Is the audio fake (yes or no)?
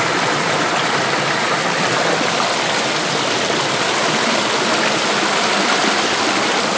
no